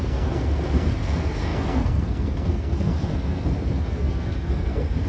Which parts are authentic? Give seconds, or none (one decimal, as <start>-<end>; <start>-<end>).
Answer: none